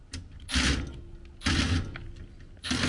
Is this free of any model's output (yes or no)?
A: yes